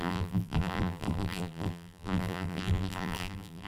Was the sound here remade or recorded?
remade